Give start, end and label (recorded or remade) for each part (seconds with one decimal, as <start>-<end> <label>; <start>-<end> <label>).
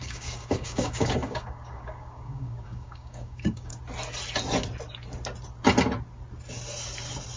0.0-3.7 remade; 3.7-7.4 recorded